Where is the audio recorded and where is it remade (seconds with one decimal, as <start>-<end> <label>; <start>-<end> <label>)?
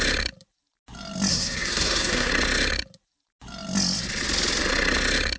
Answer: 0.0-1.3 recorded; 1.3-2.3 remade; 2.3-5.4 recorded